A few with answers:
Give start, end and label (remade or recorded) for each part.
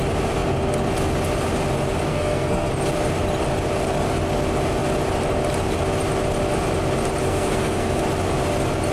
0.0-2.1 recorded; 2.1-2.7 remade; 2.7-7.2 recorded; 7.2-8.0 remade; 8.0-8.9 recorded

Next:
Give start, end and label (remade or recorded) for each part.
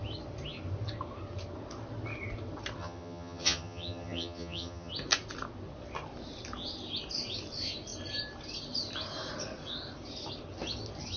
0.0-2.8 recorded; 2.8-4.9 remade; 4.9-11.2 recorded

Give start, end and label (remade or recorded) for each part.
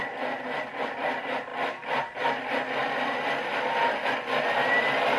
0.0-5.2 recorded